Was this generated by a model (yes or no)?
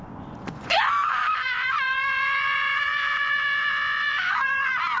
yes